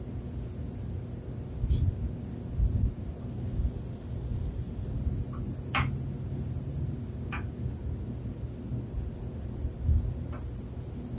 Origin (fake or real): real